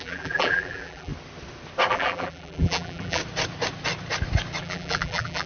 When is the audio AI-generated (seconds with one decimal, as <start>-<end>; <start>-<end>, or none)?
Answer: 0.0-1.1; 1.9-3.2; 4.6-5.5